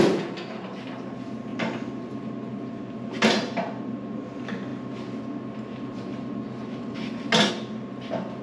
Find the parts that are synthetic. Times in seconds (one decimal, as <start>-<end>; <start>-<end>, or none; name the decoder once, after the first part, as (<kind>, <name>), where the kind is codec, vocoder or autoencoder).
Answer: none